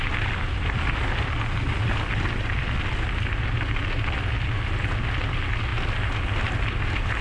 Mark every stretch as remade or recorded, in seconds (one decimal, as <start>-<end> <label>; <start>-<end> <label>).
0.0-7.2 recorded